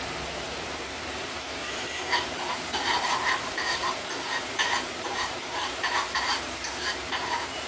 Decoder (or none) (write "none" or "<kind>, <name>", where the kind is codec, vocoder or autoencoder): vocoder, BigVGAN v2